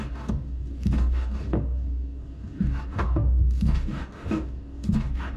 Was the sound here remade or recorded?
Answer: remade